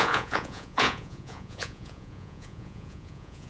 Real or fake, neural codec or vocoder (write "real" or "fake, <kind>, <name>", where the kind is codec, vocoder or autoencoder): fake, vocoder, Vocos